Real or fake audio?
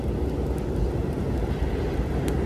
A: real